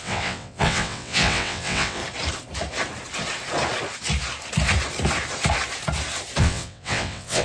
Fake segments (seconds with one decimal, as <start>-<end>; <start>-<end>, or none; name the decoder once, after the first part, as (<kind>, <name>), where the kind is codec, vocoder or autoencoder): 0.0-2.0 (vocoder, WaveNeXt); 6.4-7.4